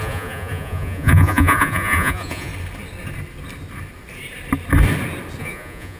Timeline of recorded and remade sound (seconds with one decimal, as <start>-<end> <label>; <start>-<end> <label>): 0.0-2.5 remade; 2.5-5.4 recorded; 5.4-6.0 remade